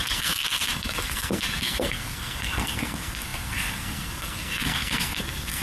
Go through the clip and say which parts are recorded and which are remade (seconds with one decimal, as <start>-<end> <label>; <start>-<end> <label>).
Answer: 0.0-5.6 remade